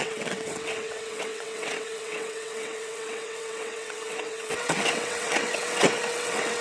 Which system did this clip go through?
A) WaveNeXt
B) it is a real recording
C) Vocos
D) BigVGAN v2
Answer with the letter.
A